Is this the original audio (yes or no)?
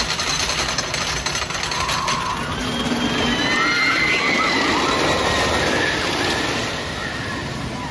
yes